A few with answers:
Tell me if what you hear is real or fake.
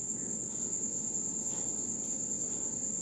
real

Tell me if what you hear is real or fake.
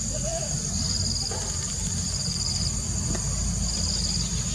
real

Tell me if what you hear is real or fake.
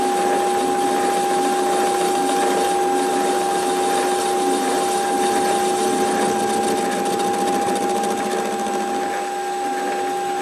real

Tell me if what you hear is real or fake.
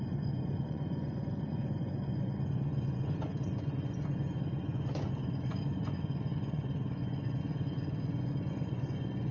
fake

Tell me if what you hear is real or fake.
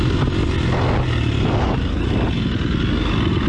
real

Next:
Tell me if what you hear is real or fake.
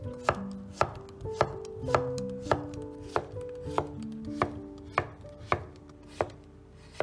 real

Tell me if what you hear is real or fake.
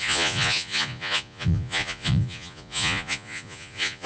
fake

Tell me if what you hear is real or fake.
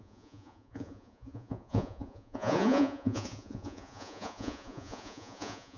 fake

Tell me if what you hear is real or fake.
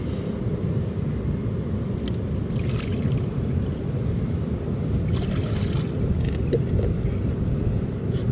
real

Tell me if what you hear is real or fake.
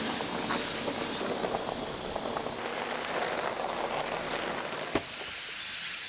real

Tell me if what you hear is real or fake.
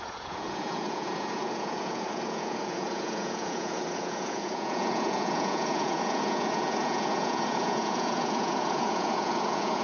fake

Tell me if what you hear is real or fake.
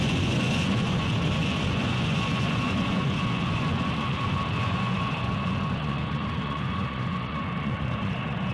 fake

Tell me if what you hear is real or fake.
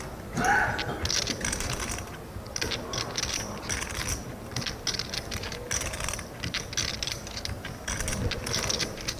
real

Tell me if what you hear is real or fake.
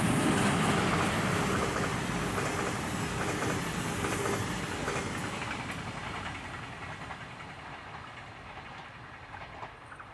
real